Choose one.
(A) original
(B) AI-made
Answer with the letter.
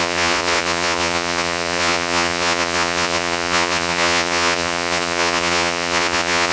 B